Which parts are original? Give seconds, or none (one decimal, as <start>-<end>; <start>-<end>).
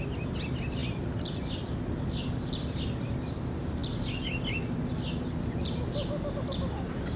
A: 0.0-7.2